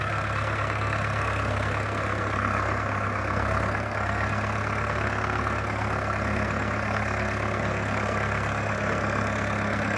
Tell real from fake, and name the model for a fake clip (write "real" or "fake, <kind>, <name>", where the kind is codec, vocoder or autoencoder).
fake, codec, SNAC